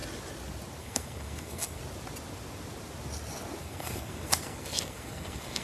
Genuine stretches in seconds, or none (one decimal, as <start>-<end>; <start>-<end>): 0.0-0.8; 1.8-3.6